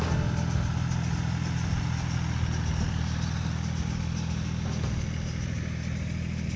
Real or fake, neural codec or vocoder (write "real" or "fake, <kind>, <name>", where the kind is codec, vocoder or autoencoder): real